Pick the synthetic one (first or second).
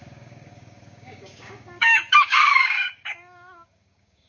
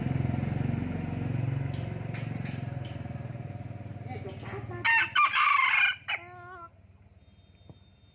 first